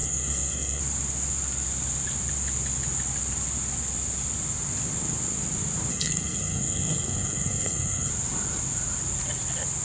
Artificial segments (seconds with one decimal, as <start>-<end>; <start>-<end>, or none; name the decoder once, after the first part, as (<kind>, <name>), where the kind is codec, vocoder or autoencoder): 0.0-0.8 (codec, SNAC); 5.9-8.1